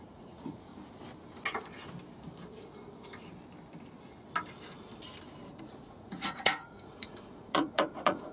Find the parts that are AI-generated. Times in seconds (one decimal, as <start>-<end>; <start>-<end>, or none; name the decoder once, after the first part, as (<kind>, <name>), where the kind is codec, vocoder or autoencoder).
0.0-0.7 (vocoder, Vocos); 5.6-8.3